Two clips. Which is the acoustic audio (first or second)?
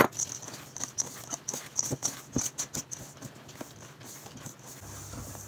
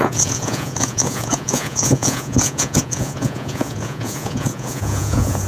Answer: first